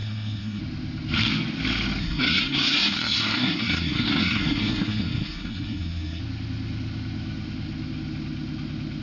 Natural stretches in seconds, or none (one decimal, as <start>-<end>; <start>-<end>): 0.6-2.0; 6.2-9.0